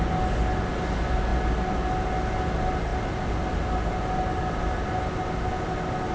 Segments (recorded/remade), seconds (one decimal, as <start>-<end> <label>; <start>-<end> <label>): 0.0-6.1 recorded